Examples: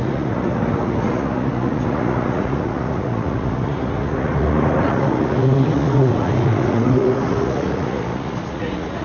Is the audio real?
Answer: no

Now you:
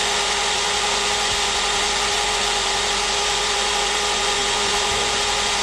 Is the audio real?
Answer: no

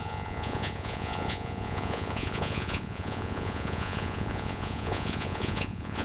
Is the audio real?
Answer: no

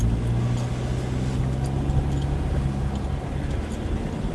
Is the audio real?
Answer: yes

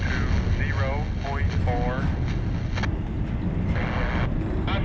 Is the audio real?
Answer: yes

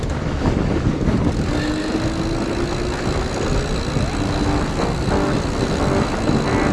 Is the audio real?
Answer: yes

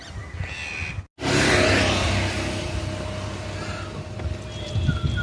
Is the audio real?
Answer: yes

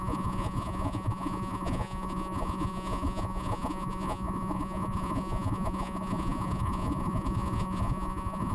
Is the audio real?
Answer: no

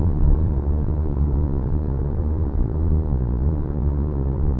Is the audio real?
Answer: no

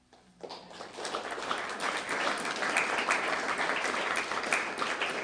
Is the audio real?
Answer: yes